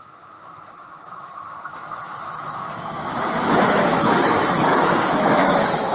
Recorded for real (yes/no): no